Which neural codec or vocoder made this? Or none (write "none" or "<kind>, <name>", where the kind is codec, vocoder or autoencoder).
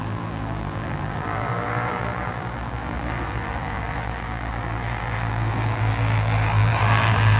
vocoder, BigVGAN v2